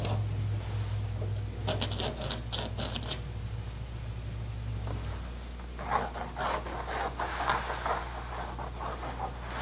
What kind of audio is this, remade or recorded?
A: recorded